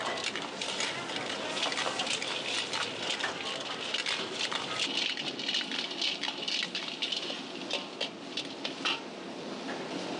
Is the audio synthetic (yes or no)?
no